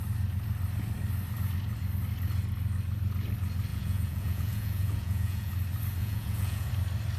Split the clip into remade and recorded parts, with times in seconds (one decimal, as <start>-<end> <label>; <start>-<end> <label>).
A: 0.0-3.7 recorded; 3.7-5.5 remade; 5.5-6.0 recorded; 6.0-6.7 remade; 6.7-7.2 recorded